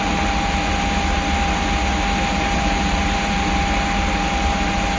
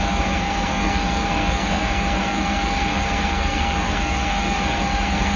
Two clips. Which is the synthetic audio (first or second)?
second